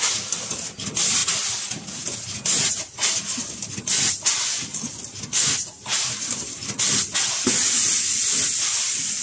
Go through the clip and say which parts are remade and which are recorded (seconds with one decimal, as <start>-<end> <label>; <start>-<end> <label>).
0.0-5.9 recorded; 5.9-6.8 remade; 6.8-9.2 recorded